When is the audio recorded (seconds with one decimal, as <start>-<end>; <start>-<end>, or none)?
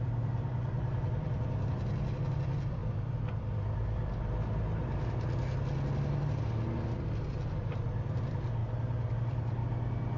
2.8-7.6; 8.6-9.1; 9.6-10.2